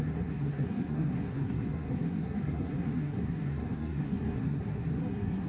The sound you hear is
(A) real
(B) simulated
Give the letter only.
B